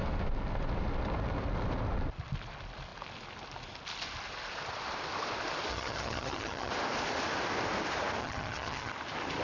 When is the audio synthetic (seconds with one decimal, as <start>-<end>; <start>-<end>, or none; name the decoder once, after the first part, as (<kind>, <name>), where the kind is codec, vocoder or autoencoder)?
5.7-6.7 (vocoder, HiFi-GAN); 8.2-8.9